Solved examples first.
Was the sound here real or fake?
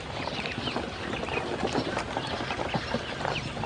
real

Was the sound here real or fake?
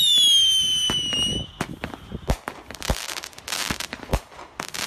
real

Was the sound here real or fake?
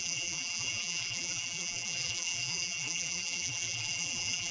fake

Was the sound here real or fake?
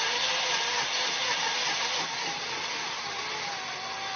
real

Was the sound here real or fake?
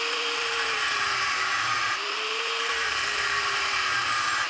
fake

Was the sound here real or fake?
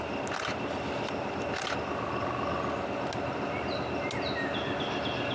real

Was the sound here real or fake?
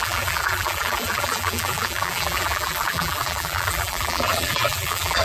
fake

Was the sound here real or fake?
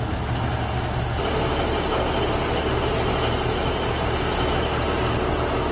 real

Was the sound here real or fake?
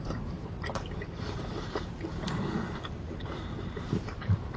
fake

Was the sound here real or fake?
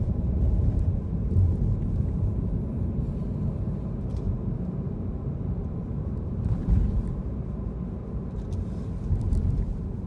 fake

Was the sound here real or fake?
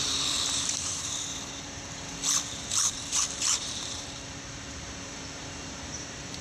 fake